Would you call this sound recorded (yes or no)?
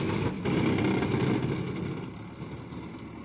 yes